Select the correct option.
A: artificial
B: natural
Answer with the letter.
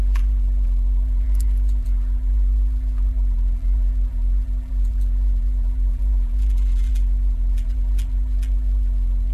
A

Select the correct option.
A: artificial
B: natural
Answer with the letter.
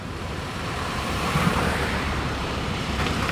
A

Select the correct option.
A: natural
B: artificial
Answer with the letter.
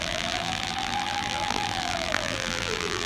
B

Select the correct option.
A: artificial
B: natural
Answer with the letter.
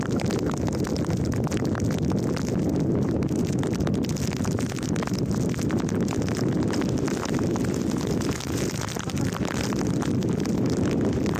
B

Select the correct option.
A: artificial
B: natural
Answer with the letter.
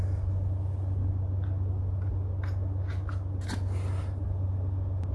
B